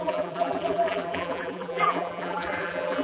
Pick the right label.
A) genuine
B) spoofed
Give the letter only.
B